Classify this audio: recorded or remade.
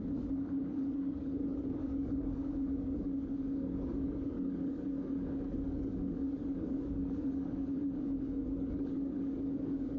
remade